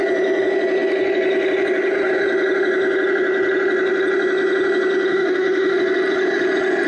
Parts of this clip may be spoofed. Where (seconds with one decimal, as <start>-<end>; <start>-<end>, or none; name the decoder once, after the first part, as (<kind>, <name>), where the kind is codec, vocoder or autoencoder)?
5.1-5.8 (autoencoder, DAC-VAE)

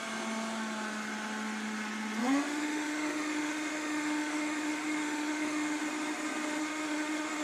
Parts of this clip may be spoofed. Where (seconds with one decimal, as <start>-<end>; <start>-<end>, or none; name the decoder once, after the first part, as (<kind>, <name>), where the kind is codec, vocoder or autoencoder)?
2.2-5.8 (autoencoder, DAC-VAE); 6.6-7.4

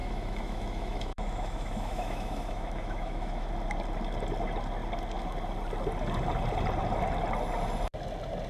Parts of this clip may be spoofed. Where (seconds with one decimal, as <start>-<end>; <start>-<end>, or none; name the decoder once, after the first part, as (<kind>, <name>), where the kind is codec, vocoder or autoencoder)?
0.0-3.5 (autoencoder, DAC-VAE)

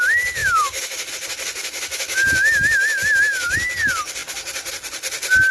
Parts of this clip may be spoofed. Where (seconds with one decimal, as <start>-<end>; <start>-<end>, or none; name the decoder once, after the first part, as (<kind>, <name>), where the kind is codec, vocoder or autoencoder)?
0.4-1.1 (autoencoder, DAC-VAE); 1.6-3.7

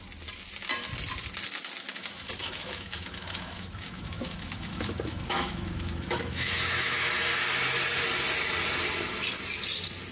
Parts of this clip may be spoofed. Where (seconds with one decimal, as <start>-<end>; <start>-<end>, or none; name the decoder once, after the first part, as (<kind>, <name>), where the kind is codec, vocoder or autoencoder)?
1.9-7.1 (autoencoder, DAC-VAE)